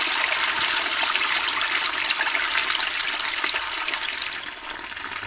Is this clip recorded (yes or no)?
yes